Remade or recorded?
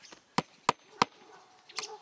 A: recorded